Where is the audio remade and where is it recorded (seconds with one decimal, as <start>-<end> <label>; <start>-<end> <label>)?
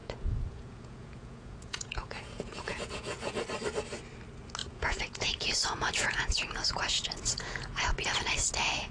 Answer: 0.0-3.3 remade; 3.3-4.6 recorded; 4.6-7.9 remade; 7.9-8.9 recorded